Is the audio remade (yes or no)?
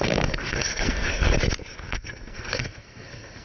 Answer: yes